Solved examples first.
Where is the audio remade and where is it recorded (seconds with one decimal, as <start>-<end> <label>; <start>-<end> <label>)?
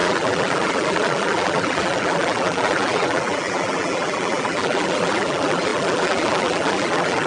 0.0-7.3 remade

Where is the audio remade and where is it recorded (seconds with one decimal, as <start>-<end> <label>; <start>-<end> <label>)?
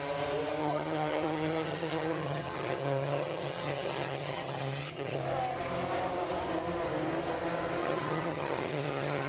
0.0-0.6 recorded; 0.6-5.2 remade; 5.2-7.8 recorded; 7.8-9.3 remade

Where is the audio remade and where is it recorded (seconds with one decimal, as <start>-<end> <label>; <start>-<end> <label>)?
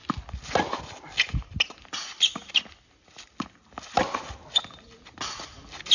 0.0-5.9 recorded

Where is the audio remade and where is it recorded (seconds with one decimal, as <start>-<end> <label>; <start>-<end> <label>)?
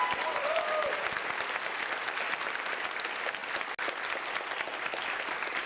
0.0-5.7 recorded